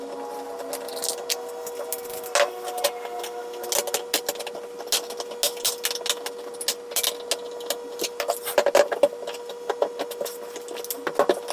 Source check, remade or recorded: recorded